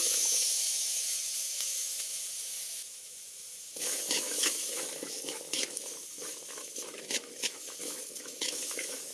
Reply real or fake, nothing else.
fake